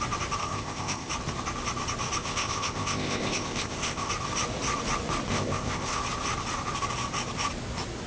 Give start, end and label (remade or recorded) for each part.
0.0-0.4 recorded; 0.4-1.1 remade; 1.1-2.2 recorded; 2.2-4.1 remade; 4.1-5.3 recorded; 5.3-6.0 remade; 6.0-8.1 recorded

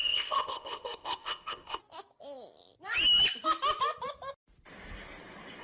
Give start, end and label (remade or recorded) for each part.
0.0-1.8 remade; 1.8-5.6 recorded

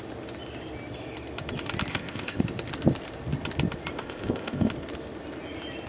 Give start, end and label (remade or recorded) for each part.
0.0-1.9 recorded; 1.9-2.4 remade; 2.4-3.9 recorded; 3.9-4.7 remade; 4.7-5.9 recorded